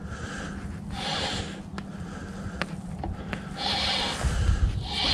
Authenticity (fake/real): real